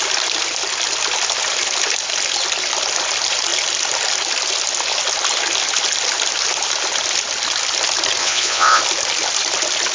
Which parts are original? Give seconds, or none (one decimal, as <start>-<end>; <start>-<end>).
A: 0.0-8.2; 8.8-9.9